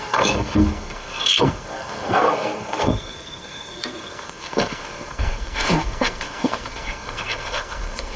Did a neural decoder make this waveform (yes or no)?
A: yes